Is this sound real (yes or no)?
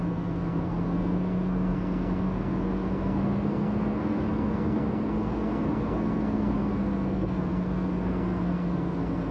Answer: no